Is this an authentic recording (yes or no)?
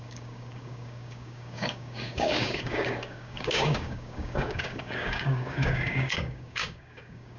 no